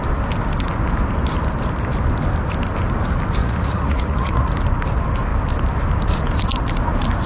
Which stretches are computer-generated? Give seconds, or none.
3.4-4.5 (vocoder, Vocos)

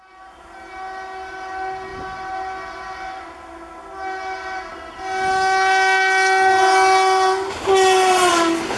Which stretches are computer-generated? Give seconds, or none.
none